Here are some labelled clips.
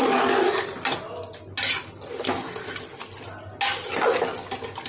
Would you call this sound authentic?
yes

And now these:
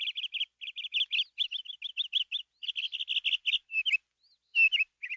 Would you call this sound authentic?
yes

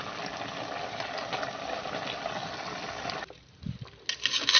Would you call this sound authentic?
yes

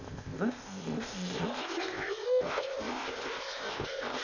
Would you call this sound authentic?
no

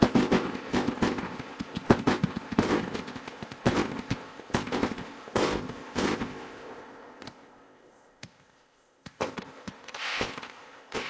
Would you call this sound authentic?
no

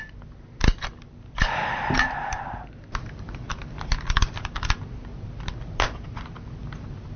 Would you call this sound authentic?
yes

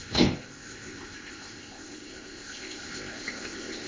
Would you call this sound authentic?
no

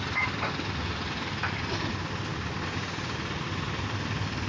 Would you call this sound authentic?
yes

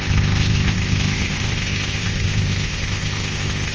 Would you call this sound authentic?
no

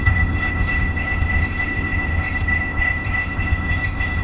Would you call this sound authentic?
no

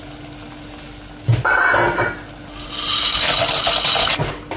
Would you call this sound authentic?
yes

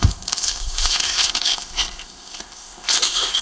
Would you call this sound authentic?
no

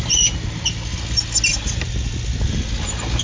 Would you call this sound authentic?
yes